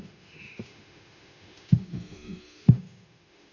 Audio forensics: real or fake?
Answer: fake